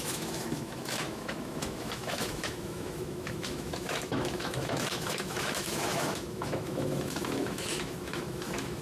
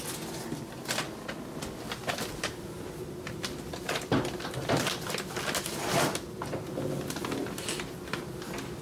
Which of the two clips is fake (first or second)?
first